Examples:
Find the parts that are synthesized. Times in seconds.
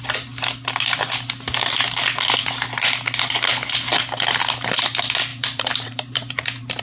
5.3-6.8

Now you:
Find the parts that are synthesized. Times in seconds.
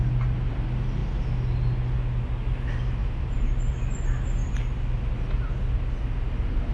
3.0-3.5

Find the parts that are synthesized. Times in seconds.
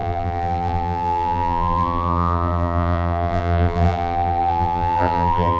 0.0-5.6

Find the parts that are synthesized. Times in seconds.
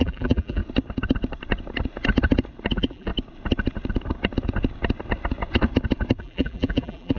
0.0-0.6; 2.7-3.1; 6.2-7.2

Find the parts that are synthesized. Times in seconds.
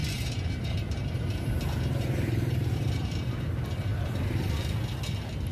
0.0-3.3; 3.9-4.5